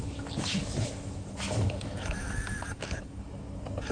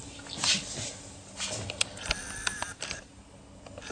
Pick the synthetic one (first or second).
first